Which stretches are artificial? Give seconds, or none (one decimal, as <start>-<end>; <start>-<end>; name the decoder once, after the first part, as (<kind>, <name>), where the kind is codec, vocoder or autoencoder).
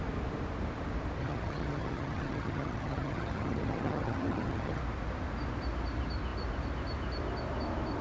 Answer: 1.2-4.8 (vocoder, HiFi-GAN)